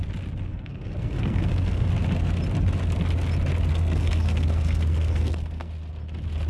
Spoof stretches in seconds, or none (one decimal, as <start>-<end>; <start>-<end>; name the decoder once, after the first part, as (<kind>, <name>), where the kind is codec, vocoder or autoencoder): 0.5-1.9 (codec, SNAC); 3.7-5.7